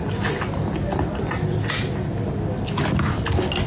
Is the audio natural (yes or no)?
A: yes